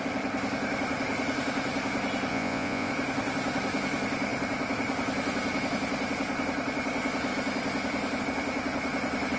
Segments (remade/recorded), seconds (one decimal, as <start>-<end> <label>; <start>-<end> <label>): 0.0-2.3 recorded; 2.3-2.9 remade; 2.9-9.4 recorded